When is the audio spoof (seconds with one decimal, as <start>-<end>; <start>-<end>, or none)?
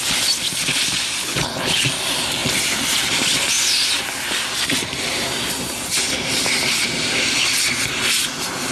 1.2-1.8